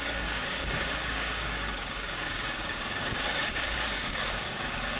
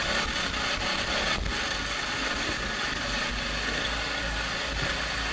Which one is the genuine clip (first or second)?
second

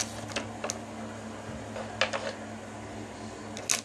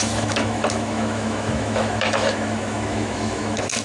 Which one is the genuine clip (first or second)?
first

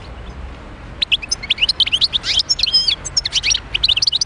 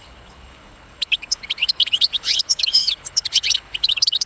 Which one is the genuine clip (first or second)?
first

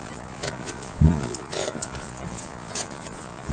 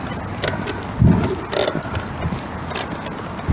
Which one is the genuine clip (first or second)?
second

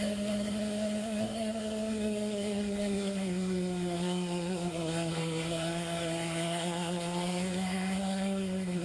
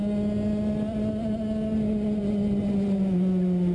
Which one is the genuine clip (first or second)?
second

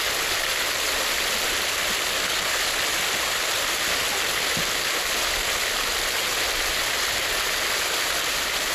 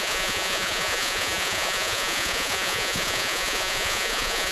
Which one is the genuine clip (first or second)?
first